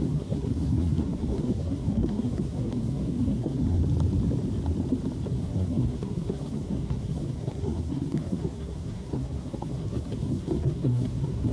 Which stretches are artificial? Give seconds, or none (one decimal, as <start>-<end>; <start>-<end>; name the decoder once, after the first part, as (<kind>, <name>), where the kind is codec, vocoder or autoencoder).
0.0-3.8 (codec, SNAC); 5.3-11.5

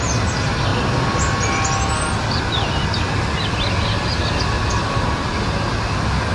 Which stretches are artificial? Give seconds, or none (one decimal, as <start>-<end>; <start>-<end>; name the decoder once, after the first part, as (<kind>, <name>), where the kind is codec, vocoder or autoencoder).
none